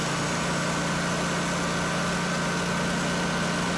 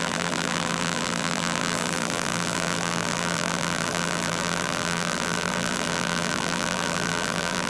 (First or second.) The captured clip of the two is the first